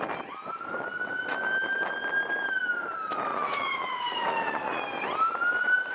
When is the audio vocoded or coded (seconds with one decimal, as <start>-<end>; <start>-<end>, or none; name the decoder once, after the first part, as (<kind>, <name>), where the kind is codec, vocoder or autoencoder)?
3.3-4.8 (vocoder, Vocos)